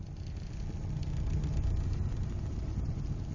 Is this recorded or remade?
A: recorded